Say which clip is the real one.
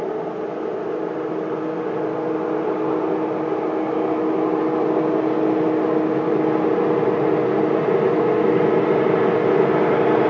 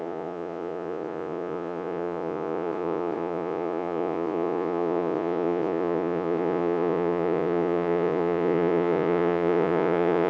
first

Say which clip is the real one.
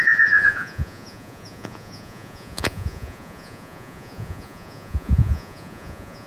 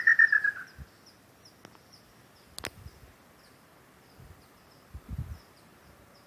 second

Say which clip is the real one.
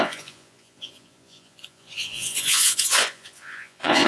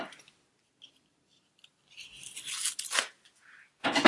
second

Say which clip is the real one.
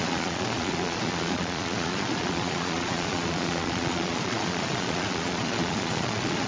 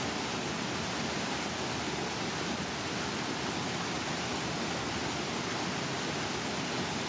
second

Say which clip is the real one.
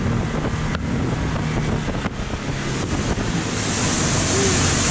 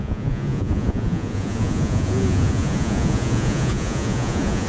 first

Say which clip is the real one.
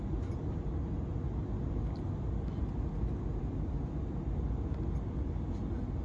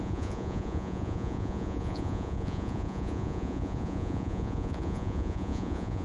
first